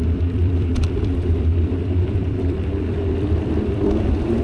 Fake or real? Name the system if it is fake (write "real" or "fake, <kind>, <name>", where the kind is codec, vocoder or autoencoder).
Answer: fake, vocoder, BigVGAN v2